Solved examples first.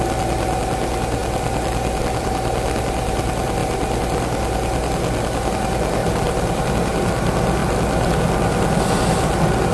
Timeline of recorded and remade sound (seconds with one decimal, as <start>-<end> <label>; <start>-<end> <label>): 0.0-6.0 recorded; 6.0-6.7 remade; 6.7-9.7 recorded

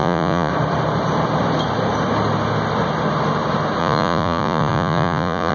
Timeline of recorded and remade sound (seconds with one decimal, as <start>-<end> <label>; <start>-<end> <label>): 0.0-0.5 remade; 0.5-3.8 recorded; 3.8-5.5 remade

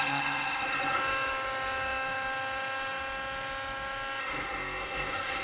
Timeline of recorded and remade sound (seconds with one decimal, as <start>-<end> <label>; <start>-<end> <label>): 0.0-1.0 remade; 1.0-4.2 recorded; 4.2-5.4 remade

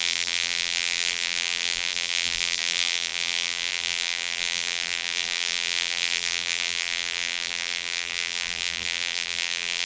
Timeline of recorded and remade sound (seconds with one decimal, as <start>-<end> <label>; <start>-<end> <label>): 0.0-9.9 remade

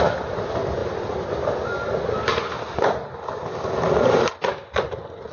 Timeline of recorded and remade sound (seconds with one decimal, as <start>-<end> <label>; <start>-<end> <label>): 0.0-5.3 recorded